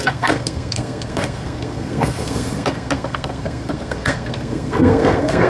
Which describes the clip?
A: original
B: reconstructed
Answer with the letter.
B